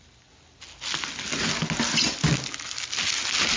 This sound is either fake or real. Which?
real